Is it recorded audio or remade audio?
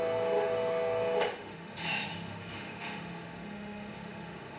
remade